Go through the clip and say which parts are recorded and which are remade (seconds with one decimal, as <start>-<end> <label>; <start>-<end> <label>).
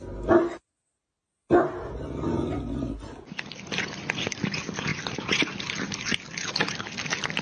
0.0-7.4 recorded